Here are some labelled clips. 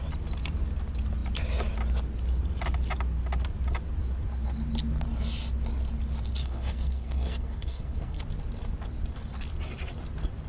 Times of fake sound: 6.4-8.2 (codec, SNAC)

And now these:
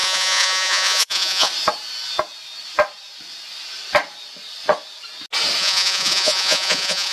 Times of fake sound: 0.0-1.5 (vocoder, Vocos); 5.6-7.1

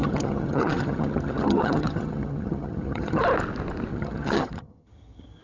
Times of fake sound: 0.0-3.2 (vocoder, HiFi-GAN); 3.9-5.4